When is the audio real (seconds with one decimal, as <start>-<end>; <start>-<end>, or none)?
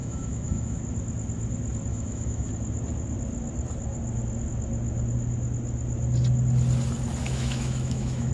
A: 0.8-1.9; 2.5-7.2